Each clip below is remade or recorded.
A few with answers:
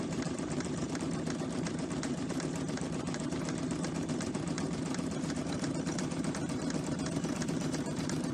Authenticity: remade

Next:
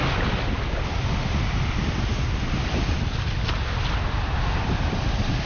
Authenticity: recorded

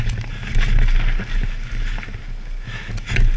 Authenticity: recorded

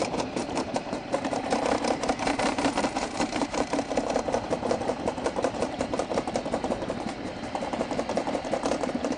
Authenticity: remade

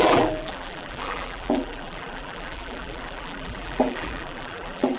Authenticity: remade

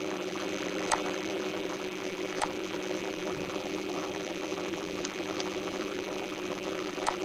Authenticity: remade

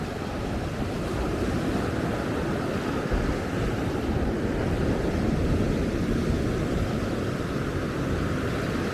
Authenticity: remade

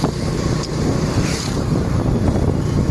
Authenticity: remade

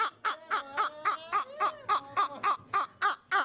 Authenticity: recorded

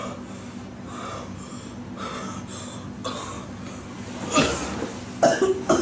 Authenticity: recorded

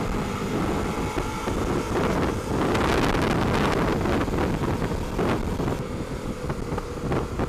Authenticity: recorded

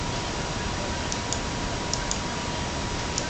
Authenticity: recorded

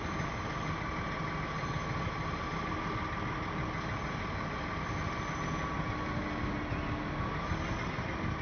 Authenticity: recorded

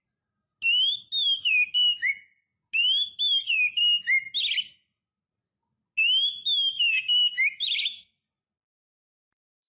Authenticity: recorded